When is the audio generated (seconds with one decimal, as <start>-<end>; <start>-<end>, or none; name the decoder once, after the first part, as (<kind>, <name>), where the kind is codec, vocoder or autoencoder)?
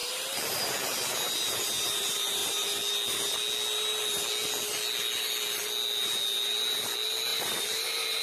7.3-8.2 (vocoder, BigVGAN v2)